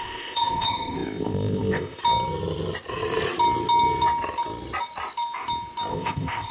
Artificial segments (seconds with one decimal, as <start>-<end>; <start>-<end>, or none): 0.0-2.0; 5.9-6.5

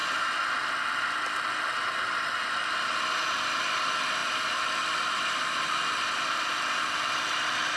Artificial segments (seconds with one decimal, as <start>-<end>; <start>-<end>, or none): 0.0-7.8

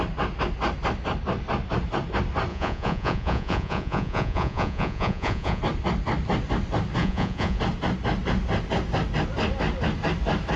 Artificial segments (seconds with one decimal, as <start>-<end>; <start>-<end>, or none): 2.5-5.6; 7.0-7.6

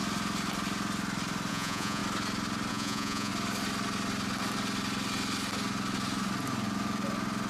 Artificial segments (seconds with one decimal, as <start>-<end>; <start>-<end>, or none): 1.5-2.0; 2.7-3.3

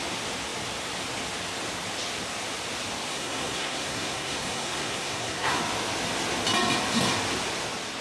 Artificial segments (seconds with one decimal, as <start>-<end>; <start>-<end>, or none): 3.1-5.6

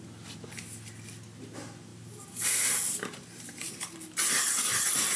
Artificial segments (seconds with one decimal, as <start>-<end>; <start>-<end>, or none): 1.9-3.7

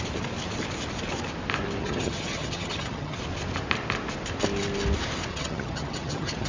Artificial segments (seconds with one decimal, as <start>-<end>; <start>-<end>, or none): 1.8-3.2; 5.3-6.5

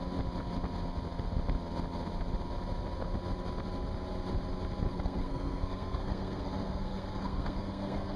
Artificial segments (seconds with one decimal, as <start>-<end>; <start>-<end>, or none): 4.9-8.2